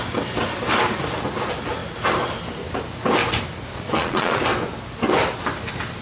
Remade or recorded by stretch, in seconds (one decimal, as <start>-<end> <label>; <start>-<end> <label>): 0.0-3.7 recorded; 3.7-4.4 remade; 4.4-6.0 recorded